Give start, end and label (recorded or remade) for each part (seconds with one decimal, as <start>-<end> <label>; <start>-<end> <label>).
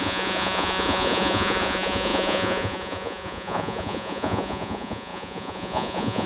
0.0-6.3 remade